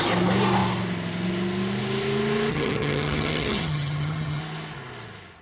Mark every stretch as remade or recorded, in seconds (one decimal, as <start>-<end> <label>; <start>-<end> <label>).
0.0-2.5 recorded; 2.5-4.4 remade; 4.4-5.4 recorded